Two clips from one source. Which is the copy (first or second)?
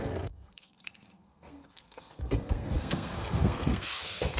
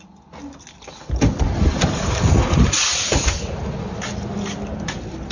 first